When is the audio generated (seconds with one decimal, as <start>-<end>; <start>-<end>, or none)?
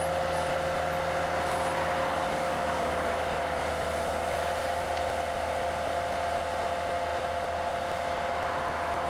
2.0-3.7